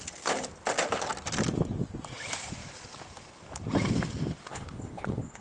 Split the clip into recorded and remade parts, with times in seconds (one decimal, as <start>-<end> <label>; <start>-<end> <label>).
0.0-4.5 recorded; 4.5-5.4 remade